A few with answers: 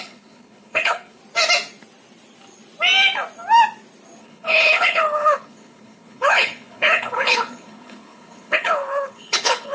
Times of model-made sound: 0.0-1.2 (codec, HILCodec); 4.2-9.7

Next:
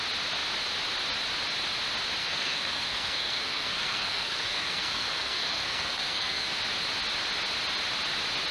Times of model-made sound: 2.2-6.6 (codec, SNAC)

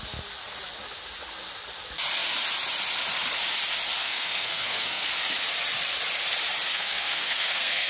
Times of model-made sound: 4.0-5.1 (codec, SNAC); 6.7-7.9

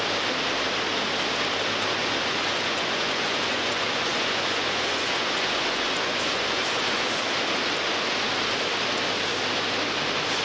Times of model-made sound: 2.0-7.2 (vocoder, Vocos)

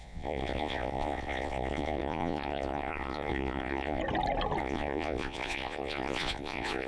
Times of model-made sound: 0.0-4.0 (vocoder, Vocos); 4.6-6.9